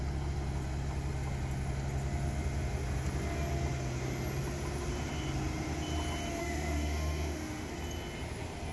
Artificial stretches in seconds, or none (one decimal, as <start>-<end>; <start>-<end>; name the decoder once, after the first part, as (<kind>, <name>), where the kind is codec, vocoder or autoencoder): 6.4-7.7 (autoencoder, DAC-VAE)